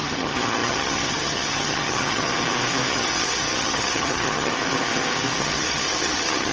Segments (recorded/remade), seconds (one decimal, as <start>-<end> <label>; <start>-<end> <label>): 0.0-2.3 remade; 2.3-2.9 recorded; 2.9-4.5 remade; 4.5-5.4 recorded; 5.4-6.5 remade